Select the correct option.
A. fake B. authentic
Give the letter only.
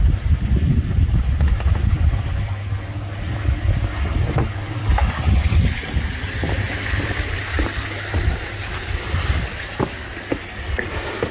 B